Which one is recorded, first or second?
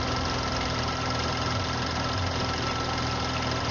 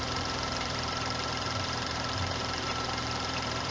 first